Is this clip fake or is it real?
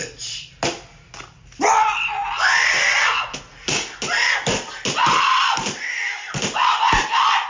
real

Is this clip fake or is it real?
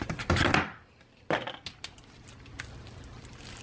real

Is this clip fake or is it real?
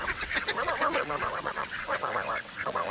fake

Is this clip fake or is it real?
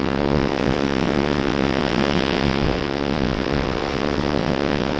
fake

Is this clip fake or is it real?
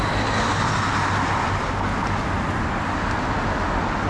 real